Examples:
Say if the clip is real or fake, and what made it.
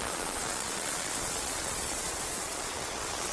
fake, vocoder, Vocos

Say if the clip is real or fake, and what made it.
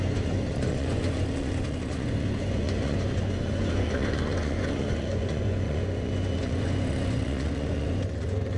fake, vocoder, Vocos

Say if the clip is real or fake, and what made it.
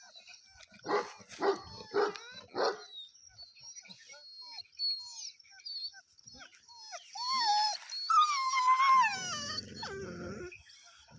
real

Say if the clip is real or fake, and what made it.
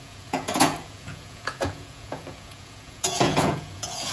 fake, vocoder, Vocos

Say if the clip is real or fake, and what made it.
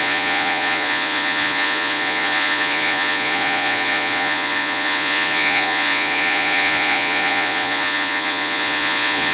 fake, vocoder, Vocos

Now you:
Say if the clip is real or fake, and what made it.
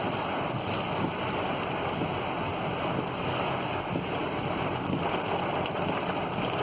real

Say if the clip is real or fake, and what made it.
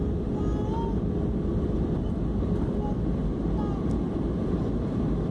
real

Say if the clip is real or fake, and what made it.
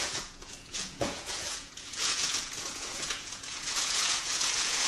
fake, vocoder, Vocos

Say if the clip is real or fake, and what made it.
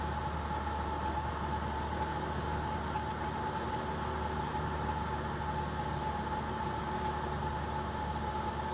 real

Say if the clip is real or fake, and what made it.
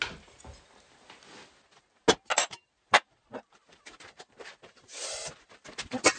real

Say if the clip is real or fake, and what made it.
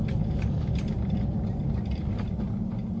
real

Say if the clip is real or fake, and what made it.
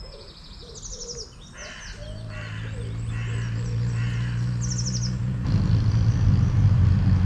real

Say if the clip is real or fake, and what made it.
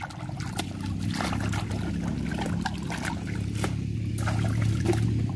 real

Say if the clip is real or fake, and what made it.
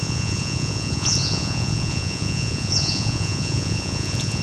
fake, vocoder, Vocos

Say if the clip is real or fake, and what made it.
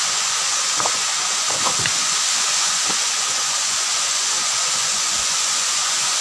fake, vocoder, Vocos